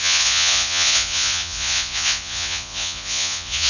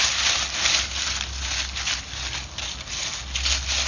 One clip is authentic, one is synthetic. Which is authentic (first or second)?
second